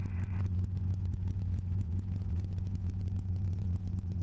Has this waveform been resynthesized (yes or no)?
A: yes